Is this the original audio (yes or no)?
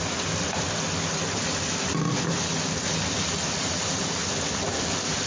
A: yes